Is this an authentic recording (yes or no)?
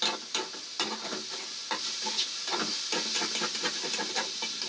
yes